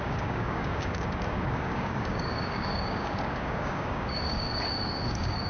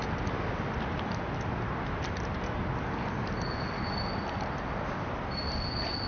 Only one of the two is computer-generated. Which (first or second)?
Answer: first